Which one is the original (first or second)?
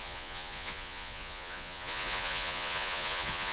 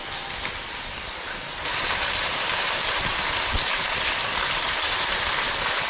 second